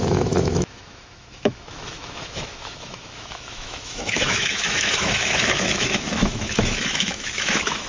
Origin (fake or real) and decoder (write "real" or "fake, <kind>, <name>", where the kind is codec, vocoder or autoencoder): fake, autoencoder, DAC-VAE